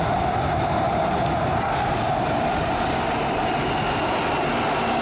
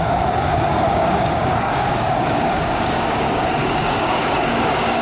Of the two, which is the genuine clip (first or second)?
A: first